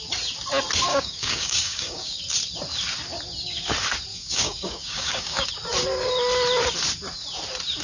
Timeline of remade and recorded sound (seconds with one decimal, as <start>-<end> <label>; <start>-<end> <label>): 0.0-0.9 recorded; 0.9-2.2 remade; 2.2-4.1 recorded; 4.1-5.5 remade; 5.5-7.8 recorded